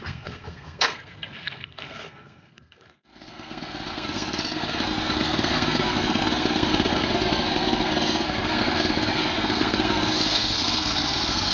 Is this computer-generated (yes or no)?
yes